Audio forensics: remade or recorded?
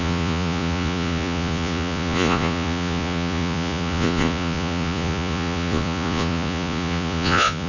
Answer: remade